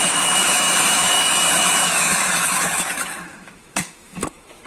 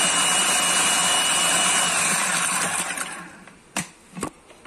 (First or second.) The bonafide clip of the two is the second